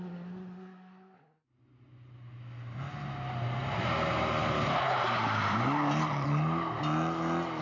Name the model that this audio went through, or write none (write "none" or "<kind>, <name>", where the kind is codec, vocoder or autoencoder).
none